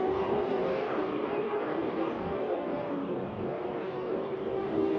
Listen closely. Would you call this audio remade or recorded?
remade